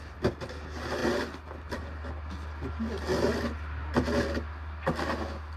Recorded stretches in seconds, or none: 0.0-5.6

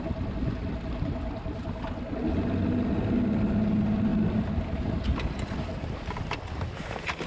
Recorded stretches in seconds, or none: 0.0-7.3